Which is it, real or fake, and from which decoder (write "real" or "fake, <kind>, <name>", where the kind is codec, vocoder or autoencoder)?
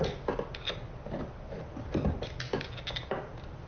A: real